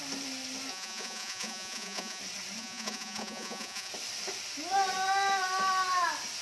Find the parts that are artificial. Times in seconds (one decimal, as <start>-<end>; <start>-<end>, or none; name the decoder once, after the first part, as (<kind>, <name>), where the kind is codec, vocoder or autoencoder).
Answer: 0.7-2.2 (vocoder, Vocos); 2.6-3.9